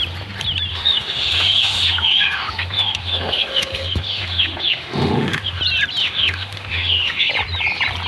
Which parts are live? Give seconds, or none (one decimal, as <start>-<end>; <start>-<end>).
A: 0.0-0.7; 5.6-6.0; 7.3-8.1